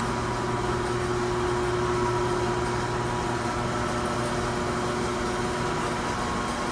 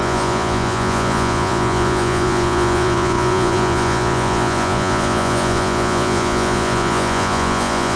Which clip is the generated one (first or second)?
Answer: second